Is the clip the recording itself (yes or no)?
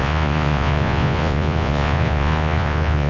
no